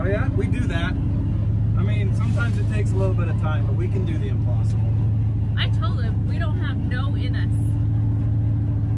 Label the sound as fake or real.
real